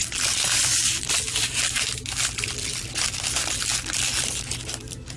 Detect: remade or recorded remade